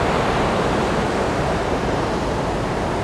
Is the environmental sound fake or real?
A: real